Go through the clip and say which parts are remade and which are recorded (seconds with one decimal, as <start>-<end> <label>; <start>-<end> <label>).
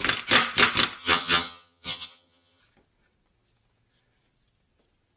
0.0-1.0 recorded; 1.0-2.6 remade; 2.6-5.2 recorded